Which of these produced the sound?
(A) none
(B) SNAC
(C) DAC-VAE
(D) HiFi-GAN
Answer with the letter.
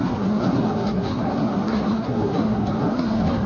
B